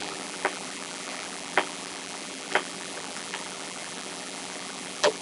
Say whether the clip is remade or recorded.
remade